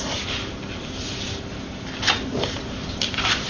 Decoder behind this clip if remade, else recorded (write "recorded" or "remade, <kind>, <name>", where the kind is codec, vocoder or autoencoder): remade, vocoder, BigVGAN v2